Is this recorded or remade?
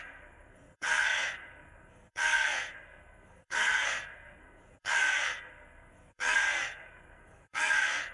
remade